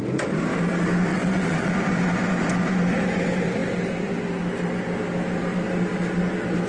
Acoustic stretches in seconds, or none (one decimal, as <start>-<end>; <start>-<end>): 0.0-1.1; 1.7-6.7